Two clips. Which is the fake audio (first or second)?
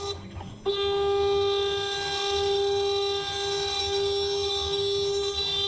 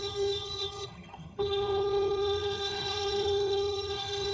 second